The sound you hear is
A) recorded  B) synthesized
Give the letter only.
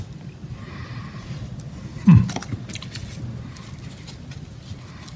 A